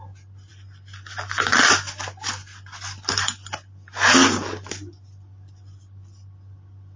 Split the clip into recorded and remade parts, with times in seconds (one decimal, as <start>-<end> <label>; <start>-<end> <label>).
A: 0.0-7.0 recorded